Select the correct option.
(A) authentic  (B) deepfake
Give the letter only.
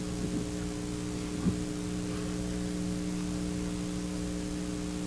A